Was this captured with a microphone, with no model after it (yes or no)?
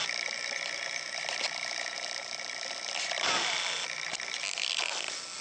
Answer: yes